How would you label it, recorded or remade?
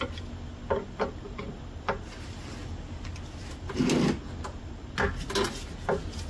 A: recorded